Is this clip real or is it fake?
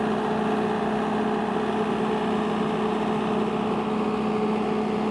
real